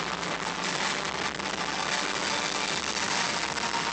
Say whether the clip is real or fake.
real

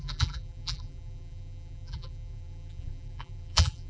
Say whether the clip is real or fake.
fake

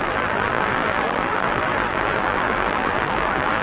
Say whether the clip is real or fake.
fake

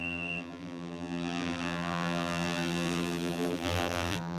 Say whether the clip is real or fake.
fake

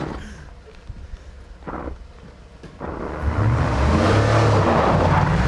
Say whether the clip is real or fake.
real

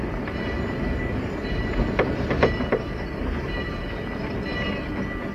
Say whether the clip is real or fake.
real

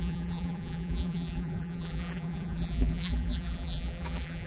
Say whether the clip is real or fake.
fake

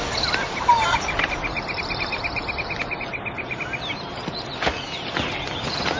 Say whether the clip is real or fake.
real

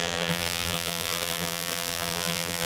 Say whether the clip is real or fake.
fake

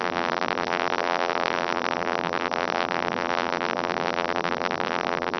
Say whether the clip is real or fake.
fake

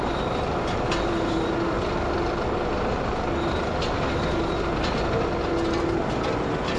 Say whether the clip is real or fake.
real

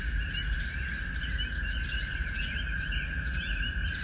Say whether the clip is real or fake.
fake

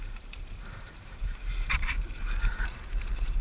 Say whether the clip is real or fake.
fake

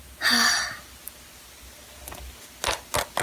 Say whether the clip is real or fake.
real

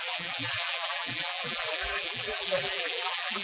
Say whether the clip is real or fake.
fake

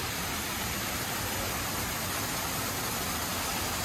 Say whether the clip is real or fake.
fake